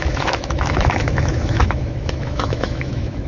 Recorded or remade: remade